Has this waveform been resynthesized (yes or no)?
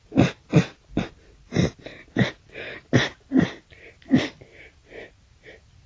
no